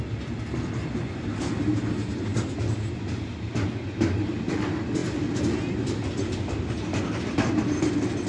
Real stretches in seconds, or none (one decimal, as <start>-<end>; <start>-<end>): 0.0-8.3

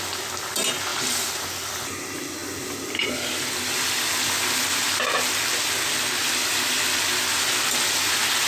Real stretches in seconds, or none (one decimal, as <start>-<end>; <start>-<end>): 0.0-8.5

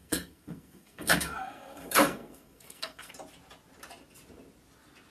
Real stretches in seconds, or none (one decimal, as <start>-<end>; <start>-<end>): 3.1-5.1

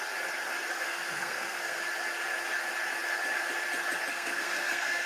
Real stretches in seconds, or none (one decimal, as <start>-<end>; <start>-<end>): 0.0-0.7; 1.8-4.1

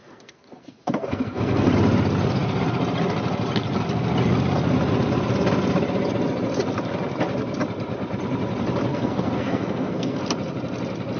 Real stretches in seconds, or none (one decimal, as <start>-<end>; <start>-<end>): 1.7-8.9; 10.2-11.2

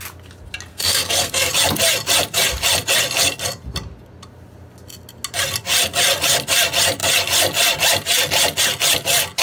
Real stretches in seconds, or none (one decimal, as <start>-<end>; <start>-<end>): 0.0-0.7; 1.5-9.4

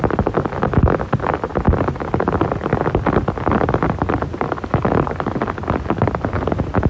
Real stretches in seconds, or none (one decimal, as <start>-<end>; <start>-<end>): 0.0-6.9